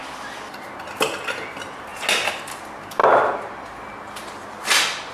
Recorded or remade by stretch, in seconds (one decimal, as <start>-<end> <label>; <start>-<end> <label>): 0.0-5.1 recorded